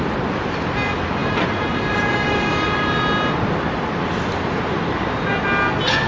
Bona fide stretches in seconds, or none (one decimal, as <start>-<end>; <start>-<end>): 0.0-6.1